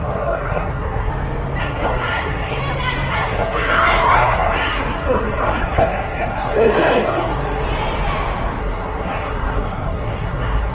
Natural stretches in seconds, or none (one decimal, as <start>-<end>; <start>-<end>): 1.1-1.6; 2.6-3.1; 7.6-8.6